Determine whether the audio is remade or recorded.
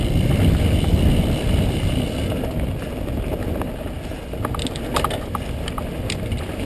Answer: recorded